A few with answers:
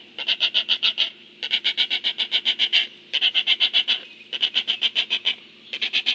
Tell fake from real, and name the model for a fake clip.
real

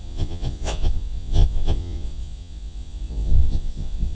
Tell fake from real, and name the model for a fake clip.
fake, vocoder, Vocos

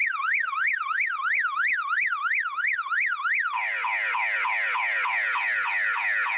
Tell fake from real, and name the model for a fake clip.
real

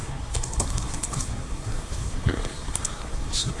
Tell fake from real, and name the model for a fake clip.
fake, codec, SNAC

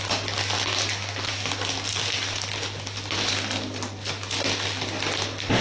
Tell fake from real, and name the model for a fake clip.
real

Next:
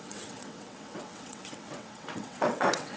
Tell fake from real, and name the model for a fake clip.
fake, vocoder, WaveNeXt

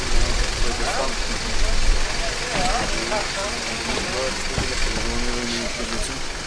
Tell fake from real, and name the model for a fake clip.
real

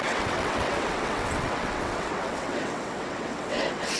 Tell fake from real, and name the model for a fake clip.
fake, vocoder, WaveNeXt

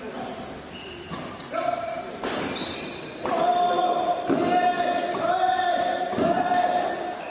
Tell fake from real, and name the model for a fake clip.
real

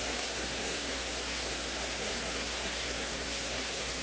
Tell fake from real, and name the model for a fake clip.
fake, codec, SNAC